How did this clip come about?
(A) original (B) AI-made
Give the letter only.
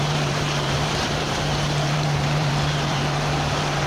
B